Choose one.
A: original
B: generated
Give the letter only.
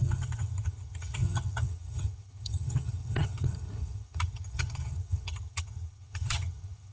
B